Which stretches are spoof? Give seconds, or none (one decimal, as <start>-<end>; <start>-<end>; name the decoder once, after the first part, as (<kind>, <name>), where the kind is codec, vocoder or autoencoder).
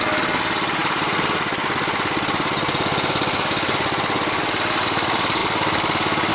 none